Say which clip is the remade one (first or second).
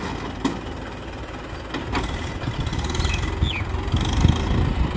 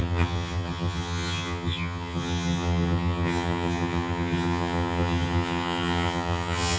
second